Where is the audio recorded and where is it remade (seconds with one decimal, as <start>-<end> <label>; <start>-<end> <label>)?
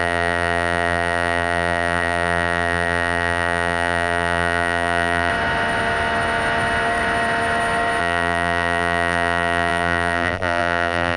0.0-5.3 remade; 5.3-8.0 recorded; 8.0-11.2 remade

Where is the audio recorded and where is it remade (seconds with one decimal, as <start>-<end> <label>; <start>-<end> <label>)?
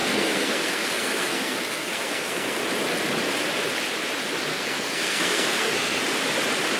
0.0-2.6 remade; 2.6-4.5 recorded; 4.5-6.0 remade; 6.0-6.8 recorded